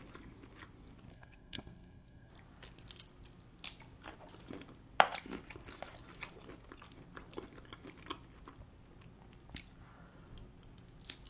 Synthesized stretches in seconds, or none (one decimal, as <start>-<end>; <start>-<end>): 1.1-2.3